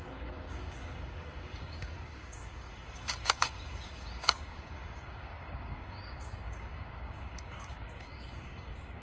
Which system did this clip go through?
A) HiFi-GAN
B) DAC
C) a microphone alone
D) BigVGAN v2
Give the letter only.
B